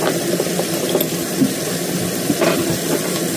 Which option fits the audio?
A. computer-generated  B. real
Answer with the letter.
B